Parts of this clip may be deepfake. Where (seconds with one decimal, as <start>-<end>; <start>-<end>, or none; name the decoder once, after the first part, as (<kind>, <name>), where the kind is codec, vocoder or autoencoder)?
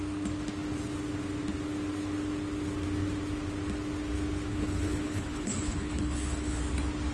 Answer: 4.5-6.6 (codec, HILCodec)